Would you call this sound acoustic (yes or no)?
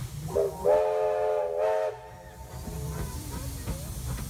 yes